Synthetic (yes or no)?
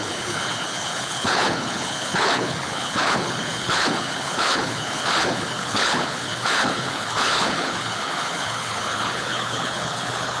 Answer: yes